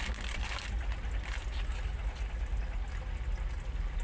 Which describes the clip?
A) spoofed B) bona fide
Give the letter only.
B